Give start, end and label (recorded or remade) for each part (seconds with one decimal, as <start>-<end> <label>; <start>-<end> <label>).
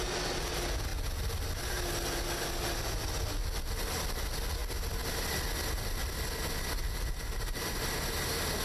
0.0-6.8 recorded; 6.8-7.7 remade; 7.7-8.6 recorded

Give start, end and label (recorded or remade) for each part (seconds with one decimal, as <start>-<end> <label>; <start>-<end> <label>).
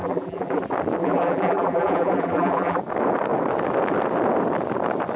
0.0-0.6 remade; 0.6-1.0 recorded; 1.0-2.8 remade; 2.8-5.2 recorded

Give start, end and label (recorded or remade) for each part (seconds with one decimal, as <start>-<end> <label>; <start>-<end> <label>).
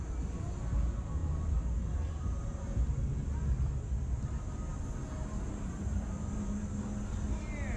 0.0-7.8 recorded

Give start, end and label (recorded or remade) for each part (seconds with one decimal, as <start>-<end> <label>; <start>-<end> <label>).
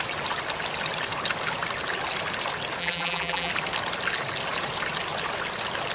0.0-2.8 recorded; 2.8-3.5 remade; 3.5-5.9 recorded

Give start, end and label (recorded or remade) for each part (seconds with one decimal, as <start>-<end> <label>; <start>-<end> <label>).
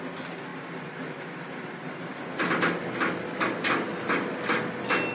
0.0-5.1 recorded